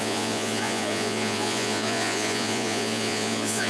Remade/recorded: remade